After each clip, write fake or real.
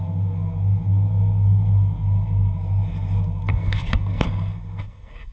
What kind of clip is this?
fake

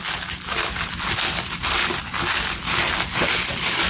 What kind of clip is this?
real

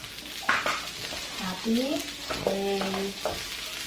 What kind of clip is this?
real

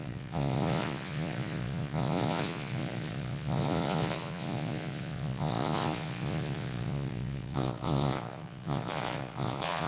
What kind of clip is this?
fake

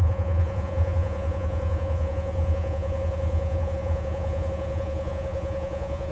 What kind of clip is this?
fake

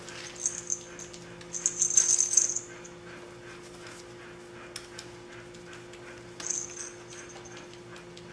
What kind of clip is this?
real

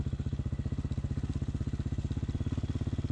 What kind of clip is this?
real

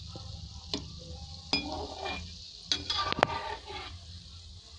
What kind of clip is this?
real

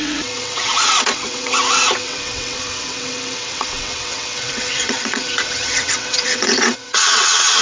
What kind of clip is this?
fake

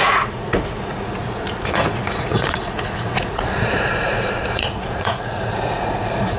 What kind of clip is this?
fake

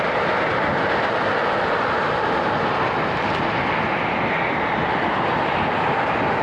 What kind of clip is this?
real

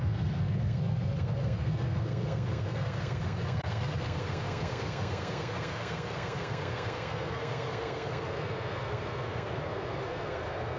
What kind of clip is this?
fake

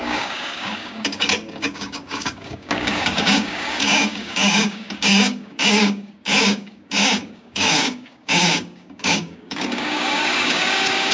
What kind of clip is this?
fake